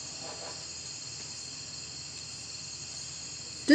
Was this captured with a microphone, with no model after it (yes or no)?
yes